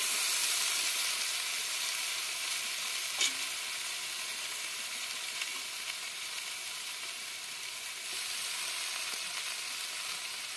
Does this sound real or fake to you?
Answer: real